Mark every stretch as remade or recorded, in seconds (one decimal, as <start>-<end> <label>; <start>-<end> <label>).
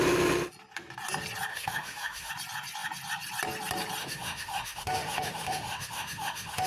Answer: 0.0-1.5 recorded; 1.5-2.3 remade; 2.3-4.0 recorded; 4.0-6.7 remade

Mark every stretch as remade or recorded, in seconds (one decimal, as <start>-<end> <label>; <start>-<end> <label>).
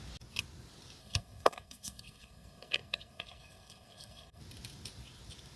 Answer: 0.0-1.0 recorded; 1.0-4.4 remade; 4.4-5.6 recorded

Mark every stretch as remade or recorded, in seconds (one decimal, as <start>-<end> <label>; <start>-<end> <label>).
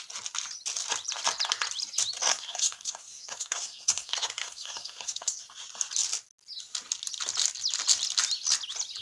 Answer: 0.0-2.3 recorded; 2.3-5.4 remade; 5.4-9.0 recorded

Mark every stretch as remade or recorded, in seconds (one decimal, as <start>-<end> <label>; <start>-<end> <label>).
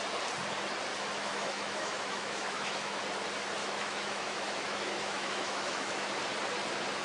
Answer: 0.0-0.9 recorded; 0.9-3.0 remade; 3.0-3.6 recorded; 3.6-6.1 remade; 6.1-7.0 recorded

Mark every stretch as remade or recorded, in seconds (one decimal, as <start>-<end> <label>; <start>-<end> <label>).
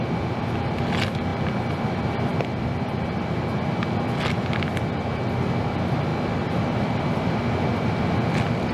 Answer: 0.0-8.7 recorded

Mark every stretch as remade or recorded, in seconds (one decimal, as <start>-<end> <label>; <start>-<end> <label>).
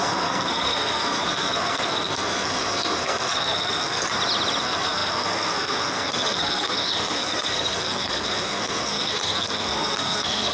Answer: 0.0-4.0 remade; 4.0-4.6 recorded; 4.6-10.5 remade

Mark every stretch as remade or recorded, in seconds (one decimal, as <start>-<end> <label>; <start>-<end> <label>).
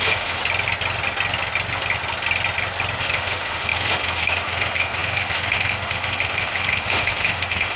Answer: 0.0-0.4 remade; 0.4-3.0 recorded; 3.0-7.8 remade